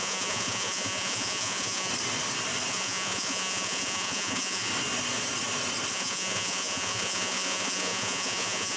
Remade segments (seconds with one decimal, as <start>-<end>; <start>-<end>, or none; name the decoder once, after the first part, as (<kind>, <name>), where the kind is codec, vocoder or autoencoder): 0.0-1.9 (vocoder, Vocos); 2.7-4.7; 5.9-8.8